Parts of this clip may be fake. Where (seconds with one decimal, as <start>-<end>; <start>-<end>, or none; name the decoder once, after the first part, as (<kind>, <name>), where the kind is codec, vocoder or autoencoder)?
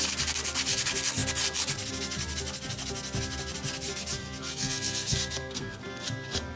4.2-5.8 (codec, SNAC)